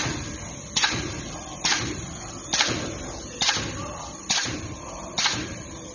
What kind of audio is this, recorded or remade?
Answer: remade